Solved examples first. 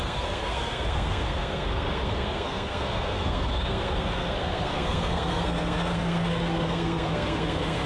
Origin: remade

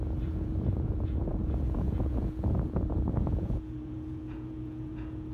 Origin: remade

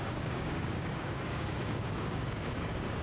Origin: remade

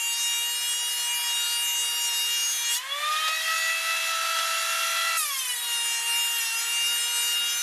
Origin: recorded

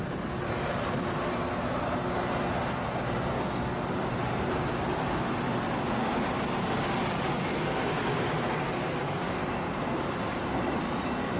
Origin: recorded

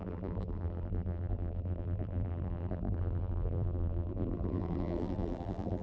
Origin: remade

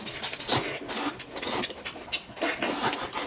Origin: recorded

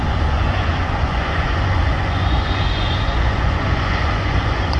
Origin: remade